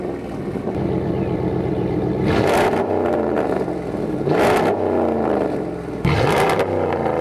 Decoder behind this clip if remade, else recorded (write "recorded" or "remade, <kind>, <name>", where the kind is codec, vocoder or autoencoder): remade, vocoder, BigVGAN v2